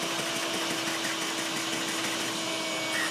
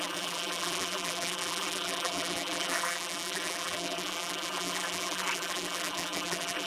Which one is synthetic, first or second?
second